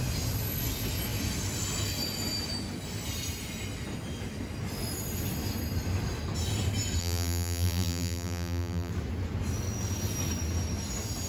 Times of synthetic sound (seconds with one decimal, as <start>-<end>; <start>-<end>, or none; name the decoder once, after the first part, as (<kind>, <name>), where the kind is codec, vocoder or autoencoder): 7.0-8.9 (vocoder, BigVGAN v2)